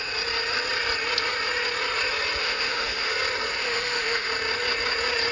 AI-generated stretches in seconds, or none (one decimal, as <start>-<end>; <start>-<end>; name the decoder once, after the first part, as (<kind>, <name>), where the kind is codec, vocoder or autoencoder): 2.4-3.1 (autoencoder, DAC-VAE); 3.6-4.3